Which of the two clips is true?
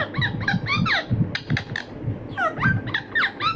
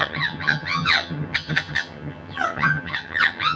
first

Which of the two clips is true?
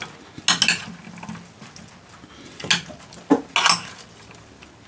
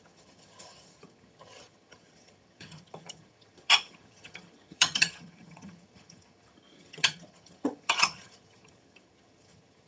first